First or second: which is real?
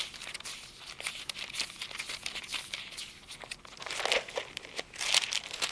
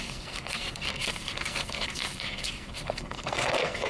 first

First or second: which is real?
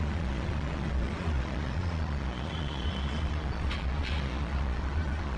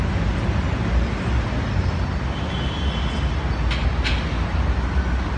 second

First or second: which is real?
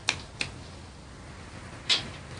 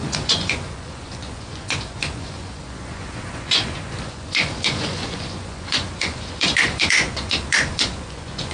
first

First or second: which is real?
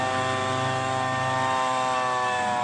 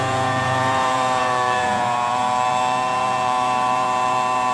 first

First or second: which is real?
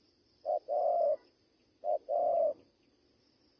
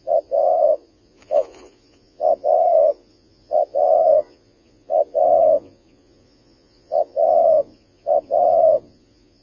first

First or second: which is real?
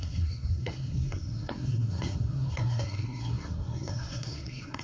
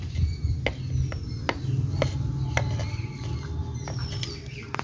second